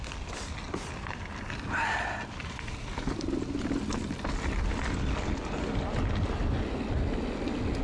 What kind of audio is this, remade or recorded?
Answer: recorded